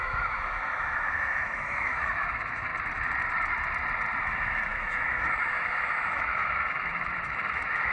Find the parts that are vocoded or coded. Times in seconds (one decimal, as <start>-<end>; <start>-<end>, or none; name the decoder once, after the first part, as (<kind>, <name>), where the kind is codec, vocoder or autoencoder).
0.0-2.7 (autoencoder, DAC-VAE); 4.2-7.9